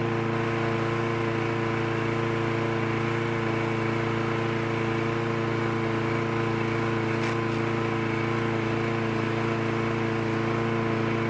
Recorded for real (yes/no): yes